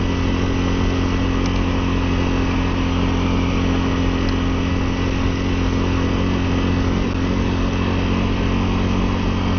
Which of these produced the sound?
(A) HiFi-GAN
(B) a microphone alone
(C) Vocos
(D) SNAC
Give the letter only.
B